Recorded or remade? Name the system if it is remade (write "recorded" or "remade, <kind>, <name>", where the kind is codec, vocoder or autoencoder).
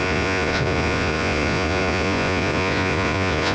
remade, vocoder, Vocos